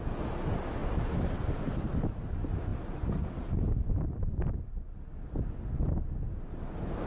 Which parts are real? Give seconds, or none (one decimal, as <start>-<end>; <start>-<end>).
0.0-7.1